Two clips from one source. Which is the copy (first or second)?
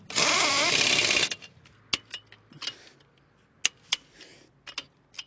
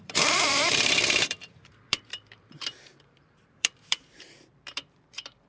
second